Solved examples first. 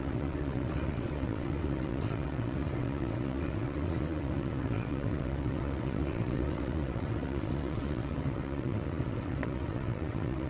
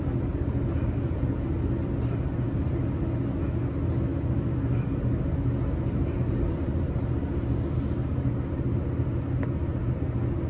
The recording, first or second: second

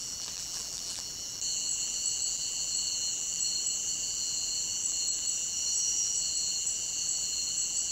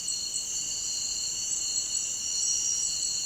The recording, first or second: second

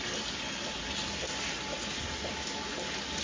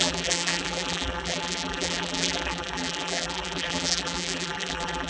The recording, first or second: first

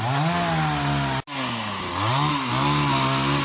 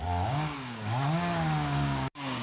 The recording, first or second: first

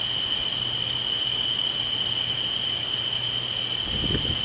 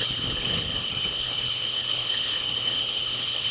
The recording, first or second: first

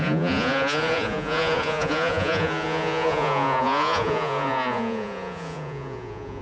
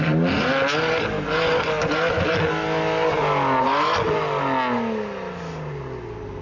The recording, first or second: second